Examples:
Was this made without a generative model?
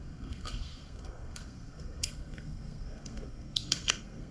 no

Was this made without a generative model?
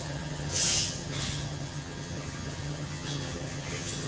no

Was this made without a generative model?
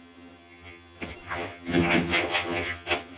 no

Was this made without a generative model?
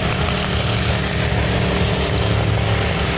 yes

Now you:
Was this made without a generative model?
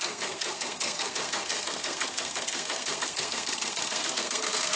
no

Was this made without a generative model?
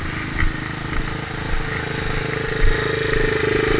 yes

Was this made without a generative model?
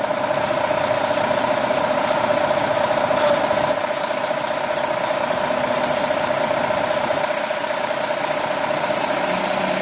yes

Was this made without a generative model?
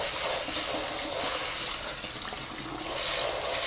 yes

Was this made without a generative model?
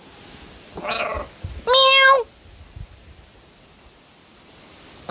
yes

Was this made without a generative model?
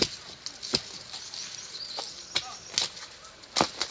yes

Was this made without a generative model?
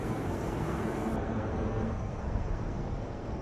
no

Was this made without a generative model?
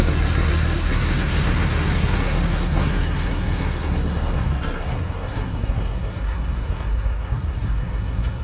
no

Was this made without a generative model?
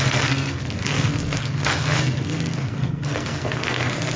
no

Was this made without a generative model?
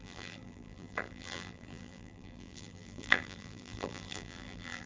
no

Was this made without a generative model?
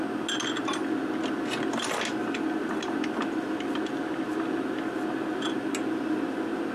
yes